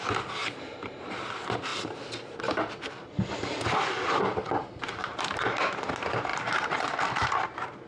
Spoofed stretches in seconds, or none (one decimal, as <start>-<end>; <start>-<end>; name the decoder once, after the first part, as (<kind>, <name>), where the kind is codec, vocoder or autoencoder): 0.4-0.9 (vocoder, BigVGAN v2); 5.0-5.7; 6.3-7.9